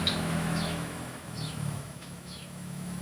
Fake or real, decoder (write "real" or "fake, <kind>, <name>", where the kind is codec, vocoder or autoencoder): fake, autoencoder, DAC-VAE